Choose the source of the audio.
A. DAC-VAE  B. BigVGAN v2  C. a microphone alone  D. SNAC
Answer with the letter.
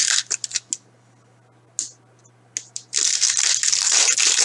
C